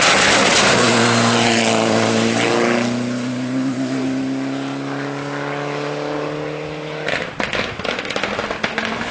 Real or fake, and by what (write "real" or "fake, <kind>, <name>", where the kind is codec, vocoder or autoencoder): real